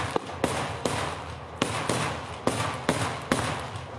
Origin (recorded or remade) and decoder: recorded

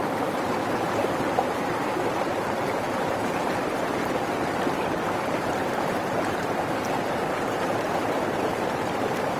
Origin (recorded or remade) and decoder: remade, vocoder, BigVGAN v2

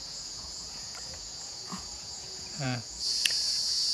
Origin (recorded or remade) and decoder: remade, vocoder, Vocos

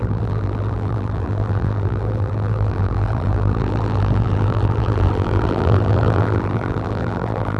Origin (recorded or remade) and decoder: remade, vocoder, BigVGAN v2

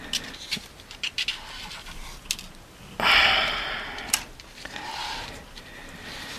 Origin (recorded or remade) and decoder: recorded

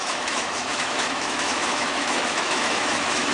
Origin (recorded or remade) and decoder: remade, autoencoder, DAC-VAE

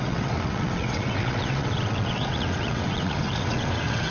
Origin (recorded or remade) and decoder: remade, vocoder, WaveNeXt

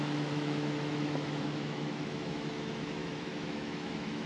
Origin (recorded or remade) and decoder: remade, autoencoder, DAC-VAE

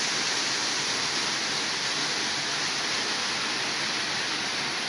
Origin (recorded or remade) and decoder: recorded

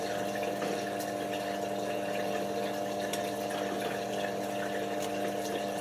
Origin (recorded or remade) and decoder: recorded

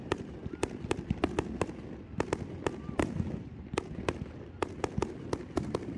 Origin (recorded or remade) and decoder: recorded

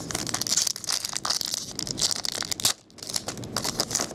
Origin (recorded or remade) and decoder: recorded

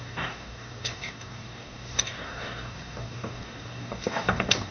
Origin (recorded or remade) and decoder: remade, codec, DAC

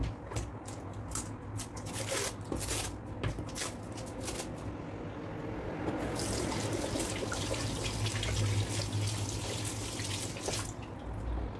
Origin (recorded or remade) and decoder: recorded